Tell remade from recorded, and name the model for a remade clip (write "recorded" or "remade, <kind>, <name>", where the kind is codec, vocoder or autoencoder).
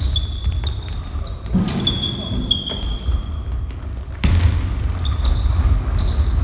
recorded